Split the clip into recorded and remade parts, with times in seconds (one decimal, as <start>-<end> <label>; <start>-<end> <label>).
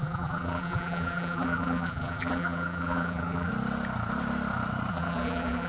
0.0-3.5 remade; 3.5-4.9 recorded; 4.9-5.7 remade